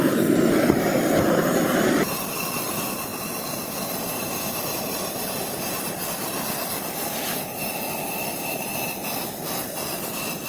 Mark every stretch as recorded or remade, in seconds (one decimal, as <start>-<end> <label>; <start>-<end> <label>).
0.0-10.5 remade

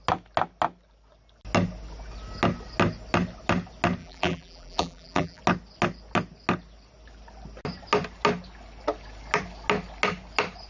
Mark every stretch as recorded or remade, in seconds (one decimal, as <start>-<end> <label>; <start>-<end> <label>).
0.0-4.0 recorded; 4.0-5.4 remade; 5.4-10.7 recorded

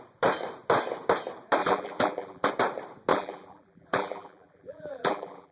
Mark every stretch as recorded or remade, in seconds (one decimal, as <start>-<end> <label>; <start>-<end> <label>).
0.0-1.6 recorded; 1.6-2.5 remade; 2.5-3.1 recorded; 3.1-5.5 remade

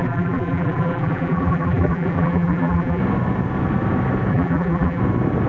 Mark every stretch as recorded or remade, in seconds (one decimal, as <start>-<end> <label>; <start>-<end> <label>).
0.0-3.0 remade; 3.0-4.3 recorded; 4.3-5.0 remade; 5.0-5.5 recorded

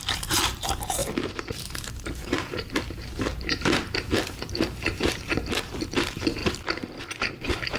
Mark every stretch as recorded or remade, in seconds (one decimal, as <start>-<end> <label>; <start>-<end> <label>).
0.0-7.8 remade

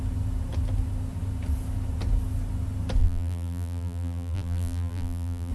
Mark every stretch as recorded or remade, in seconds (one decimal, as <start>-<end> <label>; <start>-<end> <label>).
0.0-3.0 recorded; 3.0-5.5 remade